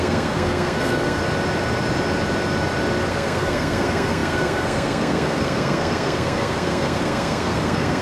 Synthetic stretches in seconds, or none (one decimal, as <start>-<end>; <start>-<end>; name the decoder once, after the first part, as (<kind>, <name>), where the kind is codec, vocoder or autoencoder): 0.0-1.2 (codec, SNAC); 3.1-8.0